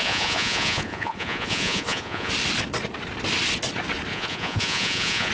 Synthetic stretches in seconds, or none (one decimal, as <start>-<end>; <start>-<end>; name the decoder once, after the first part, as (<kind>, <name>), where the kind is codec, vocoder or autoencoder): 0.0-2.3 (vocoder, Vocos); 4.1-5.3